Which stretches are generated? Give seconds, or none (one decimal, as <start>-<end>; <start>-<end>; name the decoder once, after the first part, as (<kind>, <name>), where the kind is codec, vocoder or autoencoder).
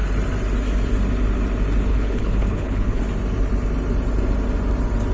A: 1.9-3.0 (codec, HILCodec)